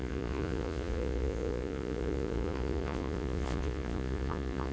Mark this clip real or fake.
fake